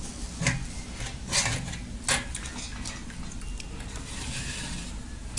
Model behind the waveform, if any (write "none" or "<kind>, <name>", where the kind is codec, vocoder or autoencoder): none